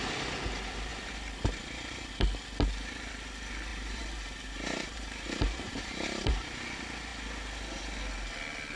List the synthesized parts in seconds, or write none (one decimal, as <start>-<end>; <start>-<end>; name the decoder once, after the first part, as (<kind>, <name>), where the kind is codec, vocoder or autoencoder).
3.7-6.6 (vocoder, BigVGAN v2)